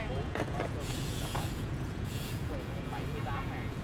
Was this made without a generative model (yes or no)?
no